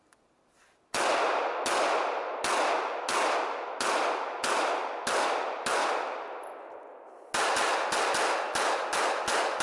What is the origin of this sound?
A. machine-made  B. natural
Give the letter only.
B